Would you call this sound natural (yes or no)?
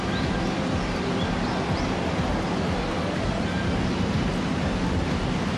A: yes